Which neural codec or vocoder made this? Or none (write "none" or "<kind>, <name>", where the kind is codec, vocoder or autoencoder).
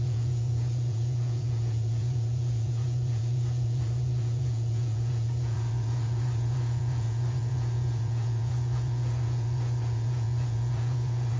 vocoder, Vocos